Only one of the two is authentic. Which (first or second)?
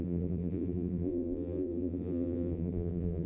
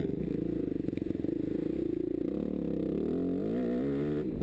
second